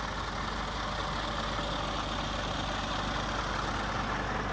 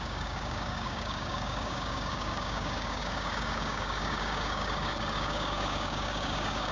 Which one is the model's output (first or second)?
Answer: second